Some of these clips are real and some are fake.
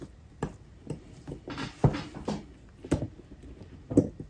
real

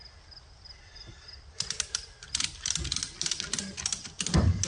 fake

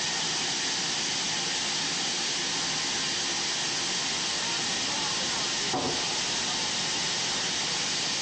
real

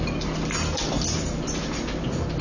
real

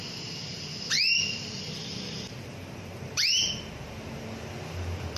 fake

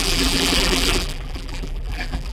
fake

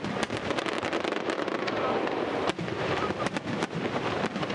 real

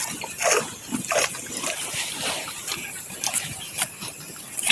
real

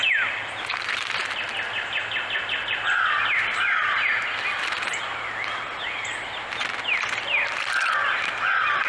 real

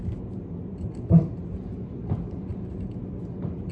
real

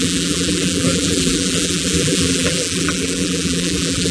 fake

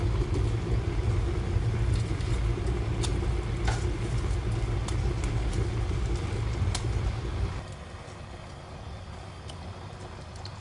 real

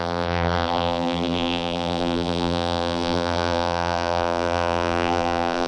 fake